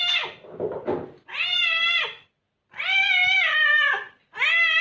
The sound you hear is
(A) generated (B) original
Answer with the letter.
B